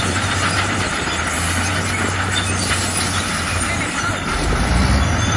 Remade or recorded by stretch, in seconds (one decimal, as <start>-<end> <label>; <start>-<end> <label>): 0.0-0.9 remade; 0.9-4.1 recorded; 4.1-4.8 remade; 4.8-5.4 recorded